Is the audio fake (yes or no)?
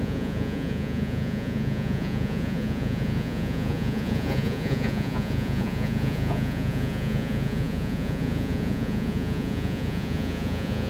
yes